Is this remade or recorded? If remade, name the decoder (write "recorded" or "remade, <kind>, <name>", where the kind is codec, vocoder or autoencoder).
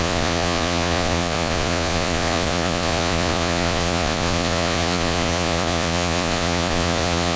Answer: remade, vocoder, Vocos